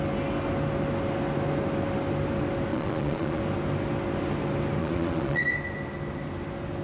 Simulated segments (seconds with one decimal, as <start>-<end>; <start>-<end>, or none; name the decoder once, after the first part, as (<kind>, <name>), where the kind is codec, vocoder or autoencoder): 2.7-3.4 (vocoder, Vocos); 4.8-5.4